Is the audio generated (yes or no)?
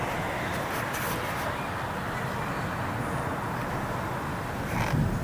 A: no